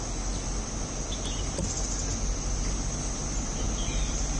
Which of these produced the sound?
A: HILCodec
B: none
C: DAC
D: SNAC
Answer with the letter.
B